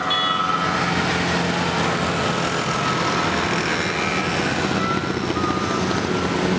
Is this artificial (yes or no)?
no